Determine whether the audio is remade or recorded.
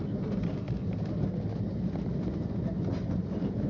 recorded